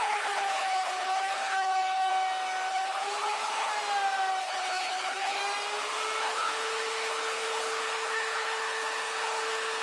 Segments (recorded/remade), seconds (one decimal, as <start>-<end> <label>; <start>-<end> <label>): 0.0-2.1 remade; 2.1-2.7 recorded; 2.7-3.7 remade; 3.7-4.4 recorded; 4.4-5.4 remade; 5.4-6.2 recorded; 6.2-9.8 remade